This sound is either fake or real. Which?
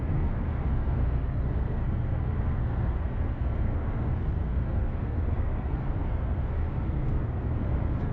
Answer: fake